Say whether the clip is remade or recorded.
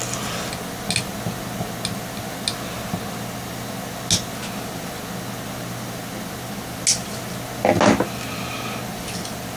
recorded